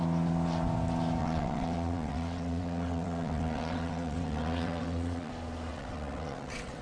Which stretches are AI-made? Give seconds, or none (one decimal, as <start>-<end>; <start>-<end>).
1.2-5.3; 5.7-6.8